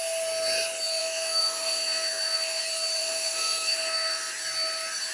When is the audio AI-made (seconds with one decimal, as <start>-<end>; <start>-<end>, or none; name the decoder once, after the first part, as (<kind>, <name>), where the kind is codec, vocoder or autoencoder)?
1.0-2.6 (autoencoder, DAC-VAE); 3.0-4.3